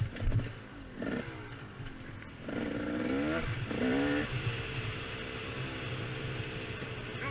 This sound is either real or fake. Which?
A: real